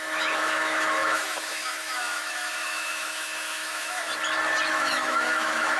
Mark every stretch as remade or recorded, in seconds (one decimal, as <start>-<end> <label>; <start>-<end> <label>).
0.0-4.1 remade; 4.1-4.7 recorded; 4.7-5.8 remade